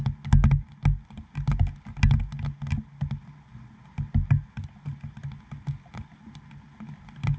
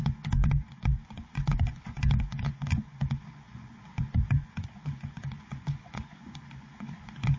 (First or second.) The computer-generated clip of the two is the second